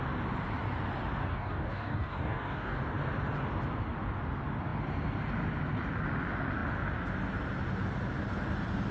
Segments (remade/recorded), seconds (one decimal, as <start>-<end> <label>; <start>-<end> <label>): 0.0-1.3 recorded; 1.3-2.8 remade; 2.8-8.9 recorded